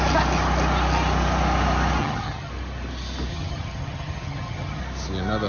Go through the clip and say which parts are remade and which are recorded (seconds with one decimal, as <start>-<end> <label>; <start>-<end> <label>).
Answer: 0.0-2.0 recorded; 2.0-2.5 remade; 2.5-3.3 recorded; 3.3-4.8 remade; 4.8-5.5 recorded